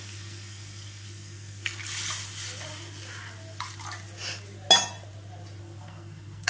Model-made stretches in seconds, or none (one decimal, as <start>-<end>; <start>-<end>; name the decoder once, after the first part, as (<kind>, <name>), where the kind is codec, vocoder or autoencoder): 0.0-1.8 (codec, SNAC); 5.6-6.5